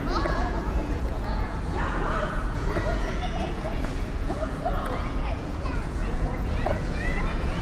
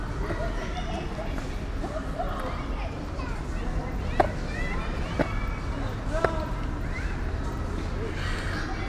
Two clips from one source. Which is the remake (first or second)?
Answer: first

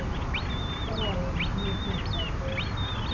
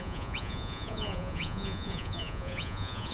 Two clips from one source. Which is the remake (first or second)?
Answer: second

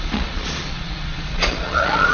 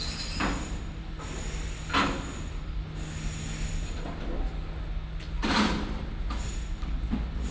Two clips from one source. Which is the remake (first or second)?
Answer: first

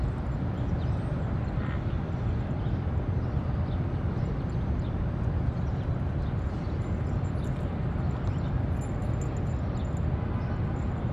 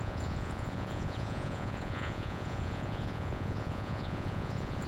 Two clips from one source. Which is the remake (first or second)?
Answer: second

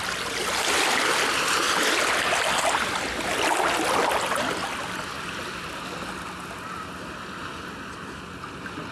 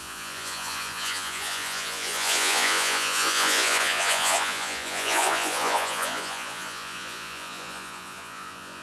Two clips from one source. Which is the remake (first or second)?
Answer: second